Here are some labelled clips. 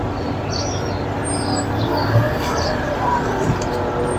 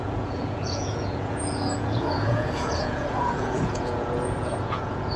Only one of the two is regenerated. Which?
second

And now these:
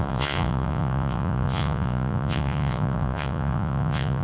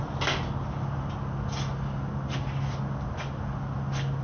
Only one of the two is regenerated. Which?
first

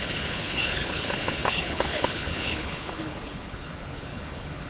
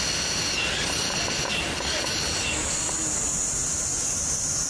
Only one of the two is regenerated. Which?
first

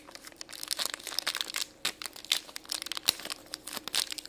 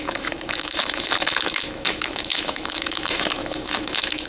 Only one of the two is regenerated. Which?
second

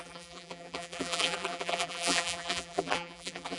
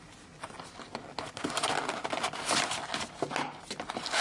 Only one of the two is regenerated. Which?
first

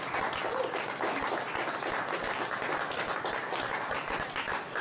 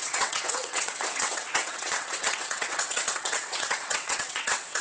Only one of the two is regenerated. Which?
second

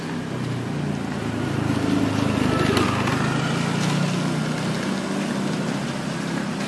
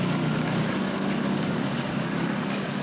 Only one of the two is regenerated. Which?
second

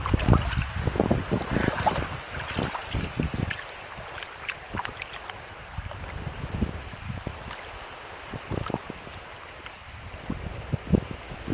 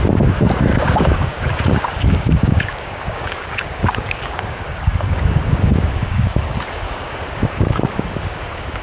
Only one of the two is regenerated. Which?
second